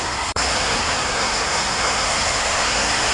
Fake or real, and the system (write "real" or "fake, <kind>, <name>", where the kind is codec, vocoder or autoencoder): fake, codec, SNAC